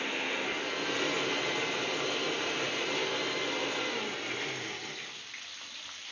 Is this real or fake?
real